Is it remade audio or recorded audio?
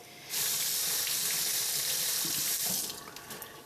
recorded